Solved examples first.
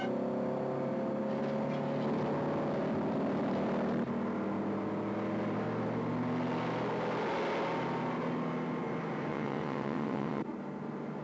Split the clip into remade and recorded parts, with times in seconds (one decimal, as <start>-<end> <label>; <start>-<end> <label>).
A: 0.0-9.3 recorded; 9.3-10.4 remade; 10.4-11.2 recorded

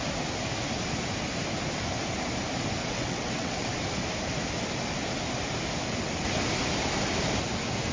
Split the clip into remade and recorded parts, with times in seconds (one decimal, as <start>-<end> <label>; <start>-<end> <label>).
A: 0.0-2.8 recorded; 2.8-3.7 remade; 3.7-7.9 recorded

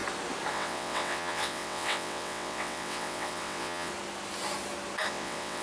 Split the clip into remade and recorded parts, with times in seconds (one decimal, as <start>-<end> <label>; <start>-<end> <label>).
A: 0.0-0.5 recorded; 0.5-3.9 remade; 3.9-5.1 recorded; 5.1-5.6 remade